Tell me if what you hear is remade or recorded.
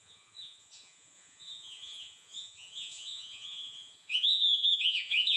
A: remade